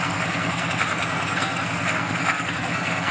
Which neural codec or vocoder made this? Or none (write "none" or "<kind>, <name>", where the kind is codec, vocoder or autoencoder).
codec, SNAC